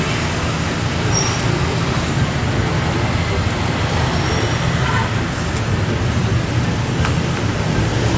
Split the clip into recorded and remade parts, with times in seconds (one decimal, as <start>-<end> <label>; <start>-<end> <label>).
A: 0.0-8.2 recorded